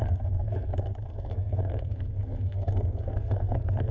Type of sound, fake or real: fake